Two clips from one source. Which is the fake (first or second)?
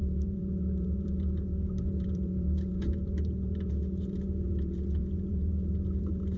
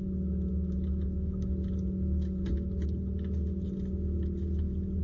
first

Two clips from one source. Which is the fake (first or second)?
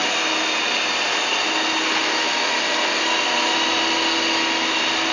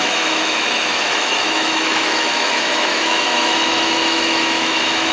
second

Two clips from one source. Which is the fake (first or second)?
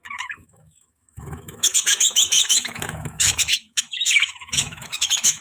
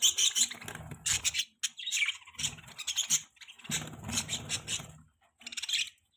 first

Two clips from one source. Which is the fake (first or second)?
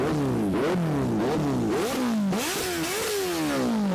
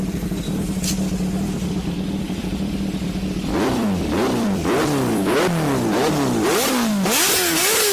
second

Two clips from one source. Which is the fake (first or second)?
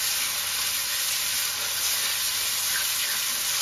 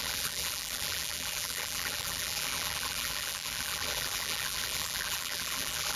second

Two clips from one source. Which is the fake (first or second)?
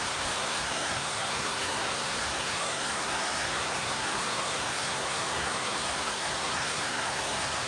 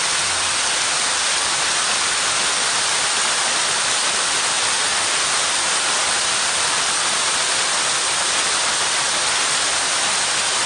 first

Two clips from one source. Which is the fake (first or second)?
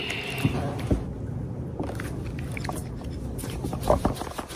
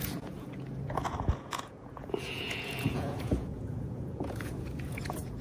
second